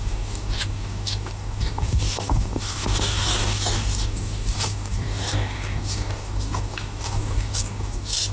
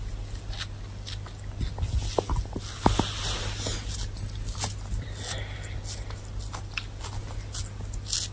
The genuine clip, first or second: second